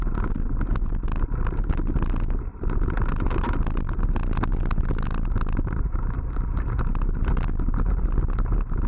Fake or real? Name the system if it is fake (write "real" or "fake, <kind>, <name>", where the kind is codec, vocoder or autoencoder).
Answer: real